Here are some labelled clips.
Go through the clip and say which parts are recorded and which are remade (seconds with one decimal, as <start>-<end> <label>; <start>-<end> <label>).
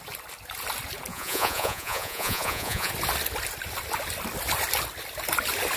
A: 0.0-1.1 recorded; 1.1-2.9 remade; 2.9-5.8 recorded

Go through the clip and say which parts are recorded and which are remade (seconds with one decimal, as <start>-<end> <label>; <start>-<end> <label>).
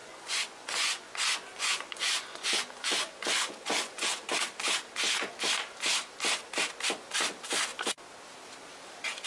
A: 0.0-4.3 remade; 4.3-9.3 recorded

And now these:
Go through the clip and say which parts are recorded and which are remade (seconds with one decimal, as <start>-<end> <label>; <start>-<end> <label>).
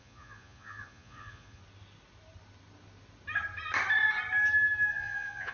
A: 0.0-1.6 remade; 1.6-4.9 recorded; 4.9-5.5 remade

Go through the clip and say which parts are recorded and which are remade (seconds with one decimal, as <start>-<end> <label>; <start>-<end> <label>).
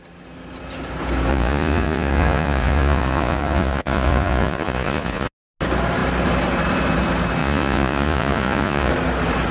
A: 0.0-1.3 recorded; 1.3-5.3 remade; 5.3-7.4 recorded; 7.4-8.9 remade; 8.9-9.5 recorded